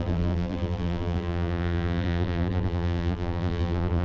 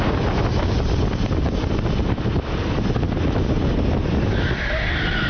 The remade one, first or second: first